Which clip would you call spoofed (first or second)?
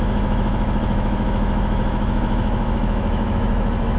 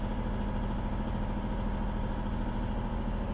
first